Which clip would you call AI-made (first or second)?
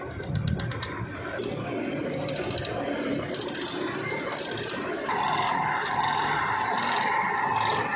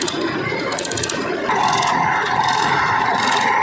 second